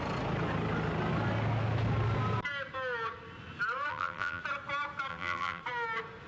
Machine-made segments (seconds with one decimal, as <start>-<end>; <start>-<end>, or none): 3.9-4.4; 5.1-5.6